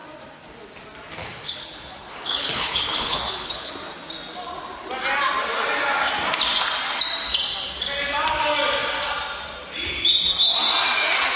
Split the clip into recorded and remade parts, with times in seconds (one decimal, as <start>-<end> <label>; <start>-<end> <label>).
0.0-1.2 recorded; 1.2-3.7 remade; 3.7-11.4 recorded